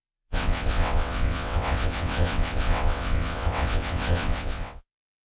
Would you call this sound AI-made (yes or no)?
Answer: yes